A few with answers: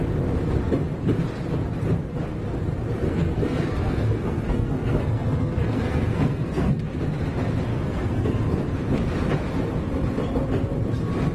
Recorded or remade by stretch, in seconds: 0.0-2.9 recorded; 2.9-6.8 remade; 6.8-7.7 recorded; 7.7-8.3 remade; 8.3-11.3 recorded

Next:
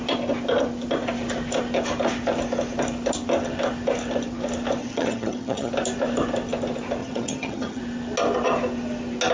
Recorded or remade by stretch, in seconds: 0.0-4.8 recorded; 4.8-5.7 remade; 5.7-7.0 recorded; 7.0-7.8 remade; 7.8-9.3 recorded

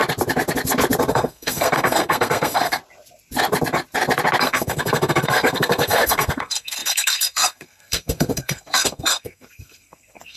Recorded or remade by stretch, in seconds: 0.0-1.1 recorded; 1.1-2.8 remade; 2.8-4.4 recorded; 4.4-10.4 remade

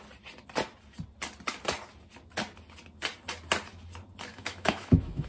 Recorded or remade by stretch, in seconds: 0.0-4.3 recorded; 4.3-5.3 remade

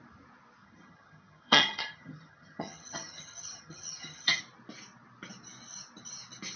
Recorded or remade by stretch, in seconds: 0.0-0.6 recorded; 0.6-4.4 remade; 4.4-6.6 recorded

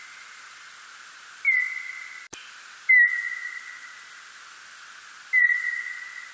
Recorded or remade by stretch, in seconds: 0.0-6.3 recorded

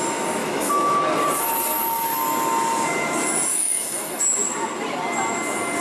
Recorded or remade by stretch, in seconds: 0.0-0.4 recorded; 0.4-1.0 remade; 1.0-3.5 recorded; 3.5-4.2 remade; 4.2-5.8 recorded

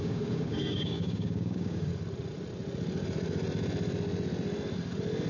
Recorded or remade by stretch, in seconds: 0.0-1.9 remade; 1.9-5.3 recorded